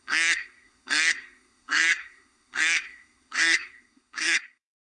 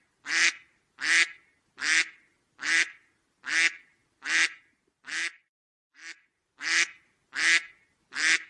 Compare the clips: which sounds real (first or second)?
second